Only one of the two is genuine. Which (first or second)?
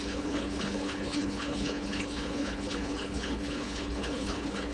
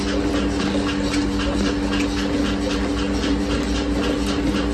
second